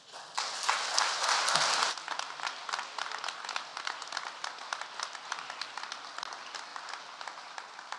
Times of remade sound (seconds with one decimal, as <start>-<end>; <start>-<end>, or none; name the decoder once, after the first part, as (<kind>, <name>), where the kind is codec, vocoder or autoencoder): 3.7-4.4 (vocoder, BigVGAN v2); 6.7-7.5